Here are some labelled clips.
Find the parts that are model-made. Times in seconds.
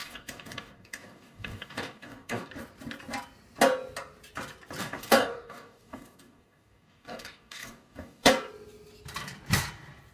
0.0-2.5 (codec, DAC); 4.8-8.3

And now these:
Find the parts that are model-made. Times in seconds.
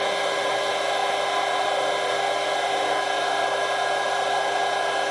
none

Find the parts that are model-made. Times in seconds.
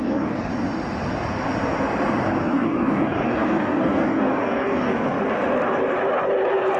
0.0-0.5 (codec, DAC); 2.4-4.9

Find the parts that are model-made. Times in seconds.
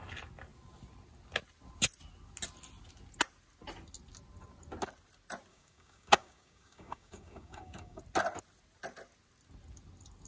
5.5-8.0 (codec, DAC)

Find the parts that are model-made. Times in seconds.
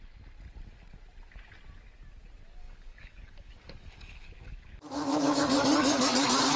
2.6-6.6 (codec, DAC)